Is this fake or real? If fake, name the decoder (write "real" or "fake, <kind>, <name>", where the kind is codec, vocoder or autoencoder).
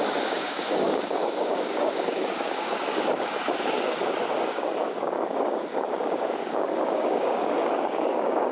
fake, codec, DAC